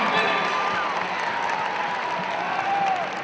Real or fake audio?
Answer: real